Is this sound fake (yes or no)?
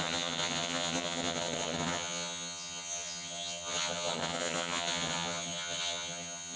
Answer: yes